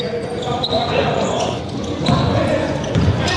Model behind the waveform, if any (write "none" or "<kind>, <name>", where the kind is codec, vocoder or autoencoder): vocoder, Vocos